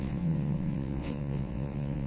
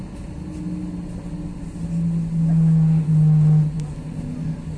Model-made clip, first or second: first